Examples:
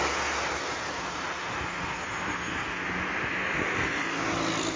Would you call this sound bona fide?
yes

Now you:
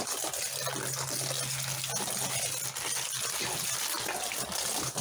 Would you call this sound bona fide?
yes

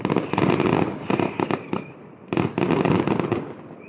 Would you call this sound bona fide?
yes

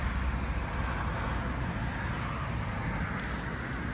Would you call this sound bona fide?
yes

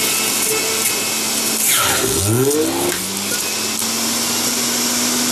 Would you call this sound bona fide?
yes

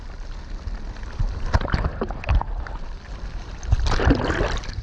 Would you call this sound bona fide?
no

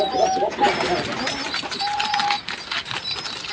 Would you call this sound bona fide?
yes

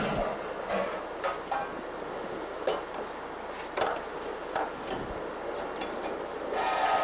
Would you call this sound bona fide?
yes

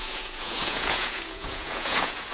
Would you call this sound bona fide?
no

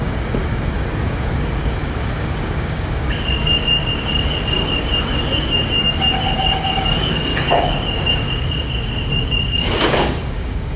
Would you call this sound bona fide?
no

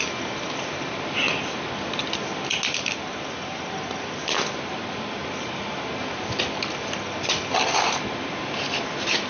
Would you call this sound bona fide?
yes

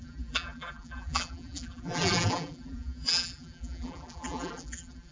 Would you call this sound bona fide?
no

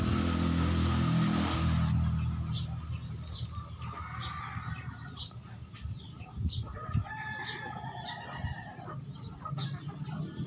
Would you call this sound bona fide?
yes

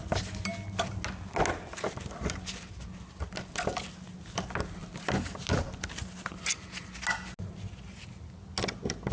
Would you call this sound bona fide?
yes